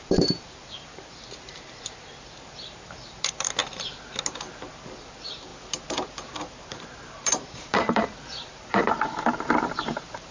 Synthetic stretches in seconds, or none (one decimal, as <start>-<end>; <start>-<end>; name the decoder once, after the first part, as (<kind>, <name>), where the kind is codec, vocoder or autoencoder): 0.0-3.6 (vocoder, BigVGAN v2); 5.0-5.5; 6.4-10.3

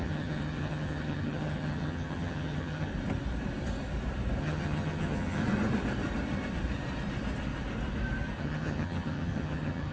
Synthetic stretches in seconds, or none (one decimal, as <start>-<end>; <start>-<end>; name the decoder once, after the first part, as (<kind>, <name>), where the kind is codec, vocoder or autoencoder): 0.0-2.9 (vocoder, HiFi-GAN); 4.4-5.4; 8.4-9.9

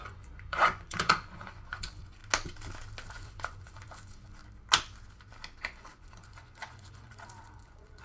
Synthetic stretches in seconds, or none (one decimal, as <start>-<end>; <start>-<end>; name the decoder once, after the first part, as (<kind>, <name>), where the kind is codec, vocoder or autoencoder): 0.0-2.2 (vocoder, Vocos); 3.1-4.4; 5.6-8.0

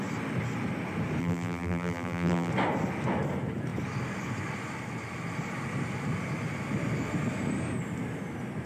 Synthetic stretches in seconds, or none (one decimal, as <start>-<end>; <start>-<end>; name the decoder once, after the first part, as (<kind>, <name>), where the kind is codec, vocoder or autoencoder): 1.2-2.5 (vocoder, BigVGAN v2)

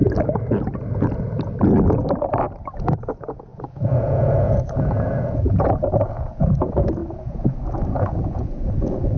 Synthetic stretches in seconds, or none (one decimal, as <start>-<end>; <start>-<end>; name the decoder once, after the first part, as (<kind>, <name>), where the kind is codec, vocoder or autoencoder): 2.8-9.2 (vocoder, Vocos)

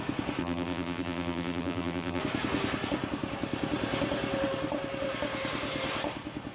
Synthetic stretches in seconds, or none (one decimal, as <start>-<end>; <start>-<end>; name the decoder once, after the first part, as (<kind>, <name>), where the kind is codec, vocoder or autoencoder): 0.4-2.2 (vocoder, BigVGAN v2)

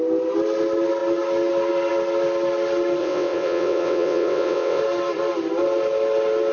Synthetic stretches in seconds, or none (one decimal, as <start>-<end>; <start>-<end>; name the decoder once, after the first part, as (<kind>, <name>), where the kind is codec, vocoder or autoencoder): 3.0-4.8 (vocoder, WaveNeXt)